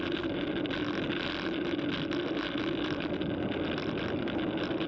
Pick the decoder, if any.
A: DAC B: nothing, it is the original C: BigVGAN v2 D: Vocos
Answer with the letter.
B